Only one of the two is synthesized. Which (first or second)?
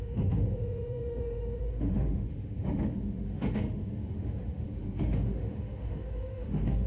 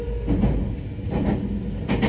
first